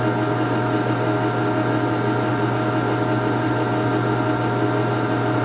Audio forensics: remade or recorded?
recorded